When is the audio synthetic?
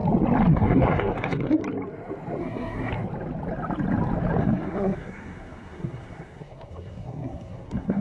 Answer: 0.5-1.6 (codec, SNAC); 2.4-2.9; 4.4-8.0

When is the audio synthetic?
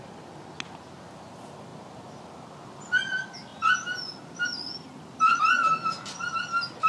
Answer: none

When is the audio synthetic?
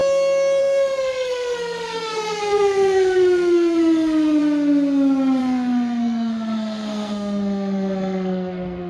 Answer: 0.6-4.4 (codec, SNAC); 5.4-8.9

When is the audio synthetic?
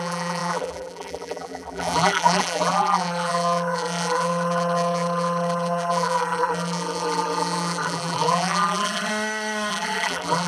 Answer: 0.0-9.1 (vocoder, BigVGAN v2); 9.7-10.5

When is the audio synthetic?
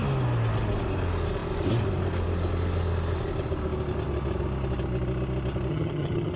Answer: 5.7-6.4 (vocoder, HiFi-GAN)